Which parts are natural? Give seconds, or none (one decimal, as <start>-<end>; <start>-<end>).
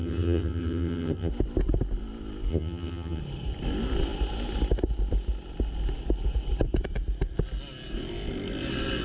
1.3-2.5; 3.2-9.0